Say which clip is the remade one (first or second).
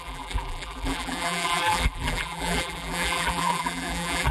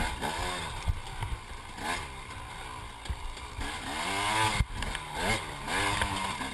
first